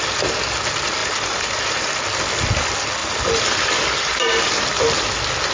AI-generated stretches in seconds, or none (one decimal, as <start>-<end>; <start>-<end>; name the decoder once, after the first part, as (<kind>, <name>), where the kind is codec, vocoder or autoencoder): 1.0-1.9 (vocoder, BigVGAN v2); 3.0-5.5